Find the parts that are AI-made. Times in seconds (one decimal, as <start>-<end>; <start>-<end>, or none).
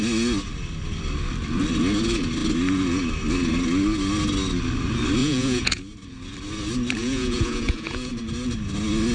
5.2-5.8; 7.0-8.1